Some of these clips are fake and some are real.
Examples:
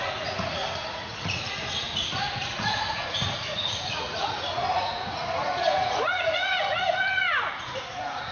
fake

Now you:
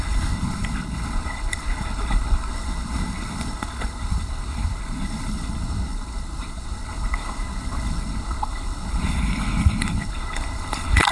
fake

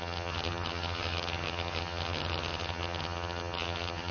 fake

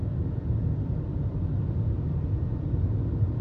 real